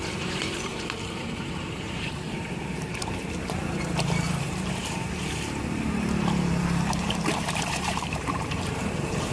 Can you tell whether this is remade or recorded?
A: remade